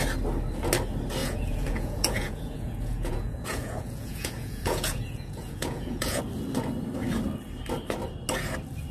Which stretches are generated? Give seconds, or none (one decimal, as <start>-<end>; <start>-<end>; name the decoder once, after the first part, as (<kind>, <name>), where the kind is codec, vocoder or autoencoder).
1.2-6.2 (vocoder, Vocos)